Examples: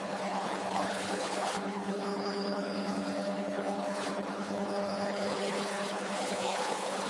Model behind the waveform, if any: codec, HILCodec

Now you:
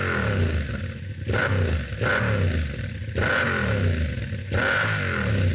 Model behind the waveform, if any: none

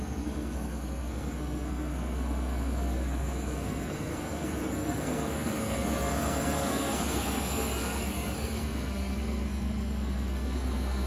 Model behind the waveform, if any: codec, SNAC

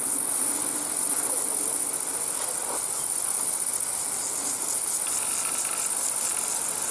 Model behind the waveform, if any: none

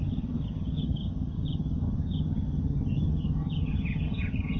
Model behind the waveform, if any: vocoder, HiFi-GAN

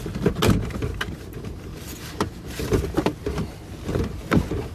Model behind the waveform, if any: none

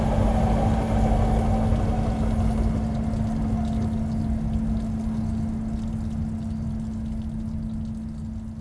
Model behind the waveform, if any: none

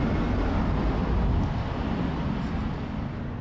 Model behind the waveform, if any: none